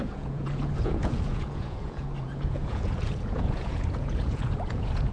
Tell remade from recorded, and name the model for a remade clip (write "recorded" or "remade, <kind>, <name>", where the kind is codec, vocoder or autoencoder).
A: remade, vocoder, Vocos